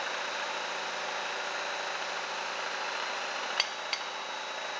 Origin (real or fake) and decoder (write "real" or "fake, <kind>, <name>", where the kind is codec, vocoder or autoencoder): real